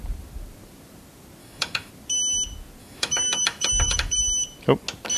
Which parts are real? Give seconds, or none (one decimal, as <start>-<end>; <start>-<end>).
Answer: 0.0-1.4; 1.9-2.8; 4.2-5.2